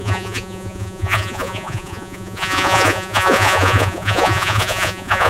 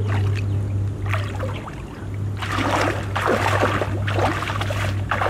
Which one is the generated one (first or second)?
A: first